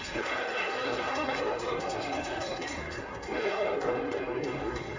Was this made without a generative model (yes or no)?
no